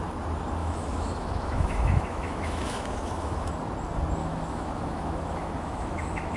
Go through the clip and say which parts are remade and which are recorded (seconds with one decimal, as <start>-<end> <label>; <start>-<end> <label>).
0.0-0.6 recorded; 0.6-3.5 remade; 3.5-4.2 recorded; 4.2-6.4 remade